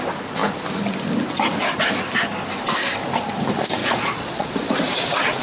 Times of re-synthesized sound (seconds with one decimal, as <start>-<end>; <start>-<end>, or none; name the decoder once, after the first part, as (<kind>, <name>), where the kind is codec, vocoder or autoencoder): 3.8-4.5 (vocoder, Vocos)